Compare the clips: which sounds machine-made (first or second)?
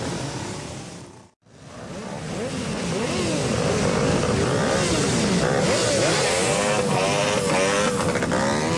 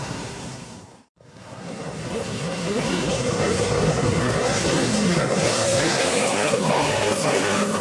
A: second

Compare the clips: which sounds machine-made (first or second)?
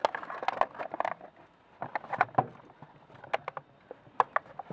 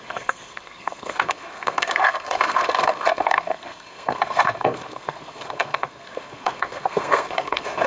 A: second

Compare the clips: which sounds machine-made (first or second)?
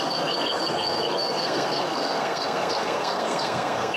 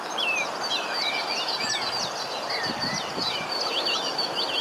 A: first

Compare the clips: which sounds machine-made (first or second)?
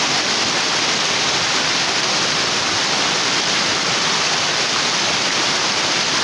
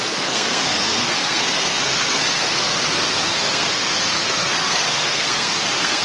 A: second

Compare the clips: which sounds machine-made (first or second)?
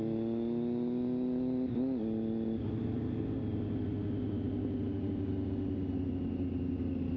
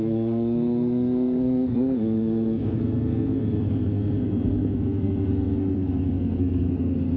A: second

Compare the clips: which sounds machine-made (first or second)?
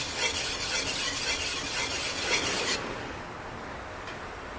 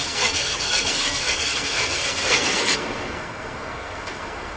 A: second